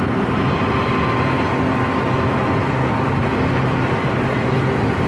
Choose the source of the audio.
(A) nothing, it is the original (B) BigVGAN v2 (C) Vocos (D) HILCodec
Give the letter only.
A